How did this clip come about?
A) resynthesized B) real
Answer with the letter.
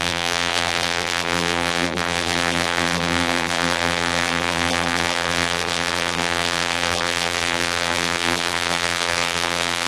A